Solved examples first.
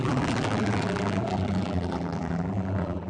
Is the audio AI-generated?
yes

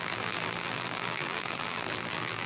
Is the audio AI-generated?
yes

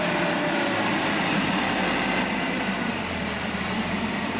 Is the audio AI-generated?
yes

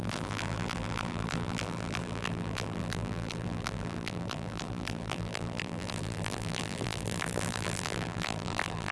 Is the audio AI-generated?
yes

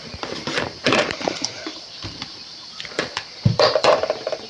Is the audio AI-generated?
yes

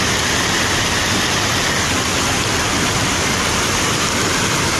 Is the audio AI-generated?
no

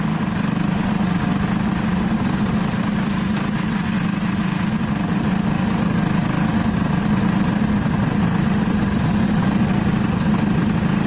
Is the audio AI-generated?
no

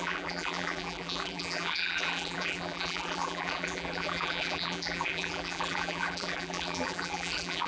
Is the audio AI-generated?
yes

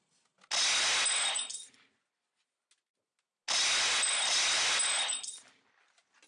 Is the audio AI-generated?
no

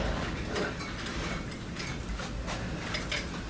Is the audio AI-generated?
no